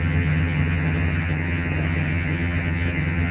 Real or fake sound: fake